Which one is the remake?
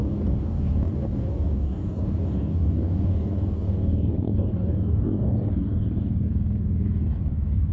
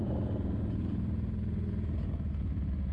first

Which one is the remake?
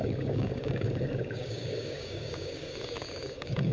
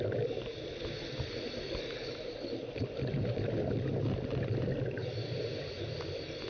first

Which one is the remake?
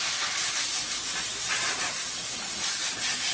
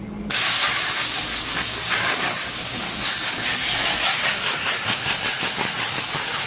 second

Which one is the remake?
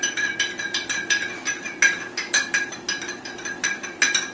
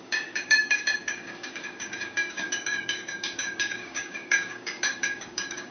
second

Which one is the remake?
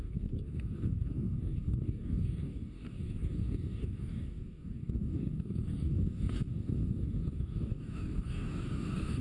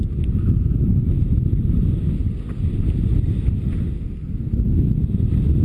first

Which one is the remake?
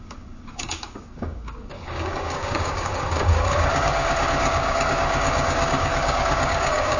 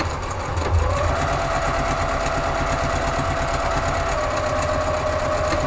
first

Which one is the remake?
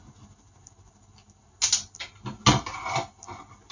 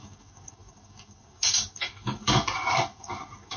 second